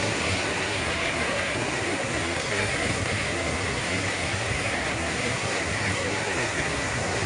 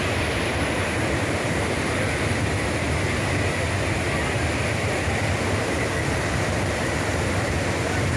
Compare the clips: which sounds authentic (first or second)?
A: second